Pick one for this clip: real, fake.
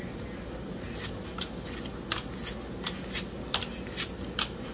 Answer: real